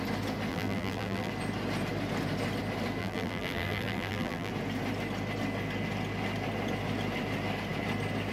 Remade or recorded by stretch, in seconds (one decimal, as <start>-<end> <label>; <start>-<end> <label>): 0.0-0.5 recorded; 0.5-1.3 remade; 1.3-3.0 recorded; 3.0-4.5 remade; 4.5-8.3 recorded